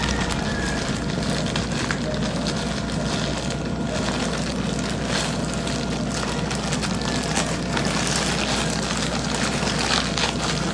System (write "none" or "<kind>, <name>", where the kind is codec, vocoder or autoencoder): none